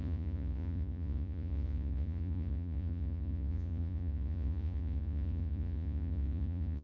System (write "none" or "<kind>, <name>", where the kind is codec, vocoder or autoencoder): vocoder, Vocos